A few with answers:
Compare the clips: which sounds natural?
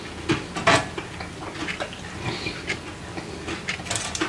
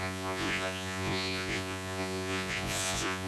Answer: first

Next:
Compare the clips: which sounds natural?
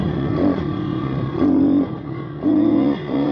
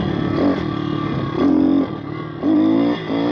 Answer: second